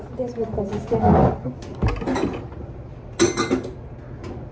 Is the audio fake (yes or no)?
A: no